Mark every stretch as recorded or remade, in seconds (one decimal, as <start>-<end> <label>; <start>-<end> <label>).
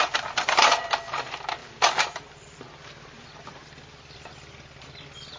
0.0-1.6 recorded; 1.6-4.8 remade; 4.8-5.4 recorded